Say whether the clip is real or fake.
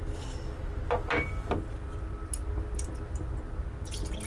real